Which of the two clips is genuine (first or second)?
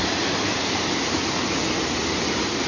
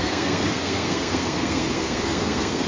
first